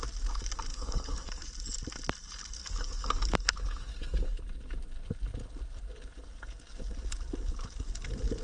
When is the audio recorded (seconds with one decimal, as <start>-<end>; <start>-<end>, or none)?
0.0-0.7; 1.5-2.6; 4.4-8.4